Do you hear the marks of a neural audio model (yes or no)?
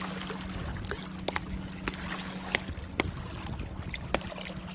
no